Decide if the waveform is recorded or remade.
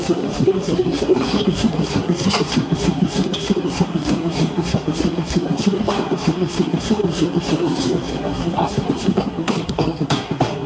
remade